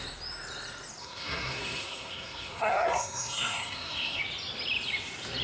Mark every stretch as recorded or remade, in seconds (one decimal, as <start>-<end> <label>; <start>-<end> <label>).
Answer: 0.0-1.0 recorded; 1.0-4.2 remade; 4.2-5.4 recorded

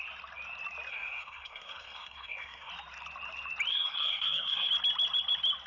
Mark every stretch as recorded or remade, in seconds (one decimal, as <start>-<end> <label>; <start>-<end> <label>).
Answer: 0.0-0.9 recorded; 0.9-2.7 remade; 2.7-3.7 recorded; 3.7-4.7 remade; 4.7-5.7 recorded

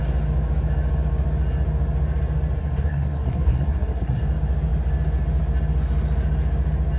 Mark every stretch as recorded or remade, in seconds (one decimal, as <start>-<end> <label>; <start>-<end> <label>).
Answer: 0.0-2.6 recorded; 2.6-4.2 remade; 4.2-7.0 recorded

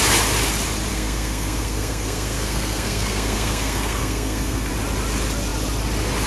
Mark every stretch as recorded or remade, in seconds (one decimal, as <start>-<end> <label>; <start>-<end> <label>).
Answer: 0.0-0.9 recorded; 0.9-4.7 remade; 4.7-6.3 recorded